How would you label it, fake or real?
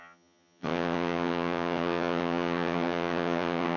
fake